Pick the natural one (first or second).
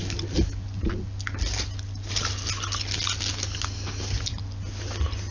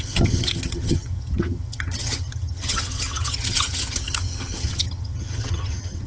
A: first